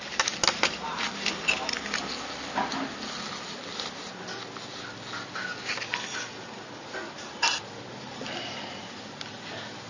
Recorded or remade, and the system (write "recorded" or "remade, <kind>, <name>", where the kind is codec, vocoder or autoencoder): recorded